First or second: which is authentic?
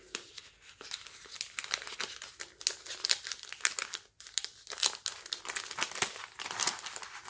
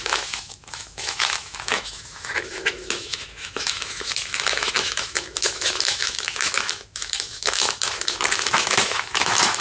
first